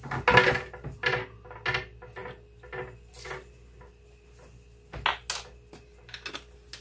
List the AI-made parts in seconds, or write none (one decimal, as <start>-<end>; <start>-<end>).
none